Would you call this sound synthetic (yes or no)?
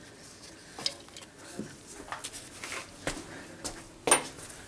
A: no